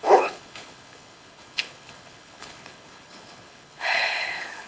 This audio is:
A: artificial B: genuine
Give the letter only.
A